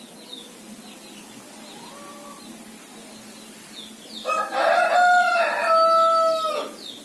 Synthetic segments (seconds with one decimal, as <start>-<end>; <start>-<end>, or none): none